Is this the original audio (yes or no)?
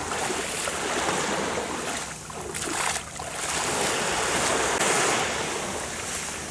yes